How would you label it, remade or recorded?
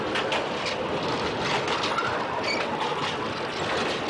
recorded